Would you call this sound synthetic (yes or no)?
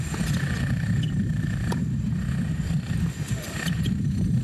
no